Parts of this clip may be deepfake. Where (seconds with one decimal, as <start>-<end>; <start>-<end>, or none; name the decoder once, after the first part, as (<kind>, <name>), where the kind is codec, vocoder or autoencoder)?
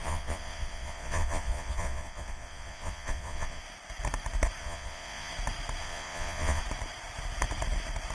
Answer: 0.0-3.6 (vocoder, Vocos); 4.6-5.3; 5.8-6.6